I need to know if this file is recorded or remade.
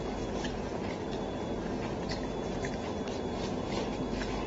recorded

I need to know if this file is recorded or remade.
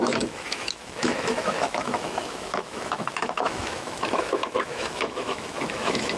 remade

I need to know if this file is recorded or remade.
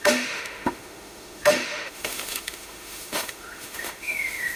remade